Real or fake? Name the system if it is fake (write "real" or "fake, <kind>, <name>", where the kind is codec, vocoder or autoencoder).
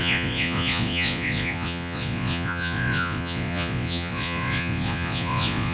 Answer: fake, vocoder, Vocos